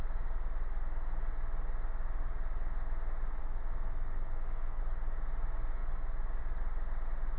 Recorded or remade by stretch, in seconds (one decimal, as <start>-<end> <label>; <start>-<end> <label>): 0.0-3.4 recorded; 3.4-4.8 remade; 4.8-7.4 recorded